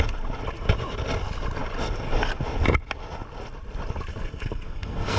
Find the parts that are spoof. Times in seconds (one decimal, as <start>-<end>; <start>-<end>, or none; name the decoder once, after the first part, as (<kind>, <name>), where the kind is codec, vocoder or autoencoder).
4.1-5.2 (codec, SNAC)